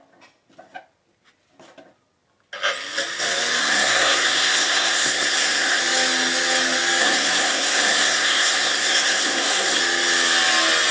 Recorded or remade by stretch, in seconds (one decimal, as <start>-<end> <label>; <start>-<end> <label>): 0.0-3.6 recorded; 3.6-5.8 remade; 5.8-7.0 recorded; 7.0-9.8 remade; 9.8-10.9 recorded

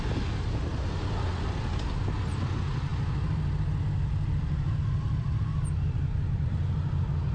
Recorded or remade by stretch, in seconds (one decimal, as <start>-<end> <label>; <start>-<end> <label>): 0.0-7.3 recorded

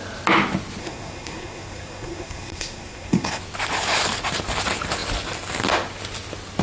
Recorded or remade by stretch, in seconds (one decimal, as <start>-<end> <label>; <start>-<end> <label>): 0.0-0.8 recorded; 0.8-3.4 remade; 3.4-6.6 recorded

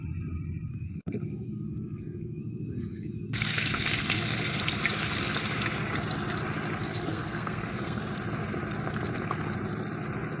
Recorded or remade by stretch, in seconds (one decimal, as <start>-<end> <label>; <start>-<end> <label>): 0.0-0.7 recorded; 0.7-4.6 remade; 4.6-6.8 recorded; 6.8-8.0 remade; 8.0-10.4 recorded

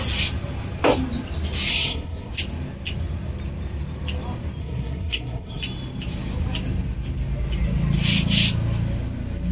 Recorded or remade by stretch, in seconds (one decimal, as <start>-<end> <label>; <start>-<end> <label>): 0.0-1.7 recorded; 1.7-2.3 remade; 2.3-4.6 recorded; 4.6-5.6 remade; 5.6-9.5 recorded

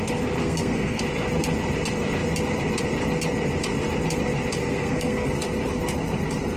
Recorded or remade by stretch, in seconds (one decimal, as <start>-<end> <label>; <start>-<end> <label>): 0.0-0.4 recorded; 0.4-1.0 remade; 1.0-4.6 recorded; 4.6-5.3 remade; 5.3-6.6 recorded